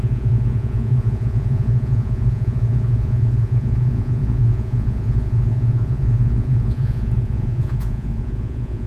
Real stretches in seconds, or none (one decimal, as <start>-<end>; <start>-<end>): none